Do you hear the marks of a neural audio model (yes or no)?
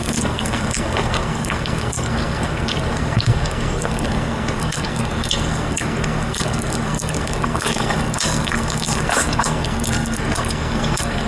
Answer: yes